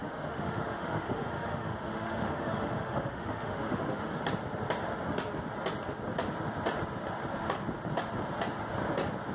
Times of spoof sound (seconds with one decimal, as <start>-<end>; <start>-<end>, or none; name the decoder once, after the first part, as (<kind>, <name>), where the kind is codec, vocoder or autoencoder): 0.0-4.2 (autoencoder, DAC-VAE)